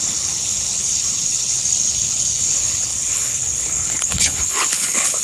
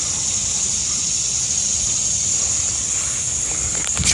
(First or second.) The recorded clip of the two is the second